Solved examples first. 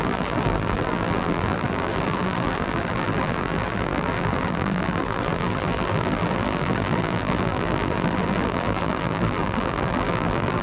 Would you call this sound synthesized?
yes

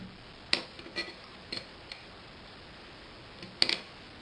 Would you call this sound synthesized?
no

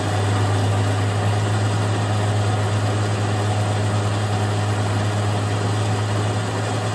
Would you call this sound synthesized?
no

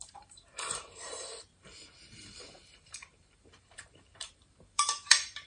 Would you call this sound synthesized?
yes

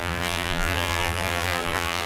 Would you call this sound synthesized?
yes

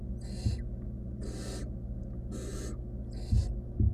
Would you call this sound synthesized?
no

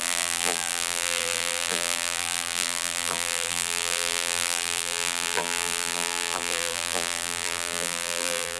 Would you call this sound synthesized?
yes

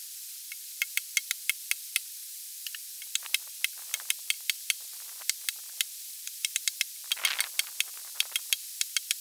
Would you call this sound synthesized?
no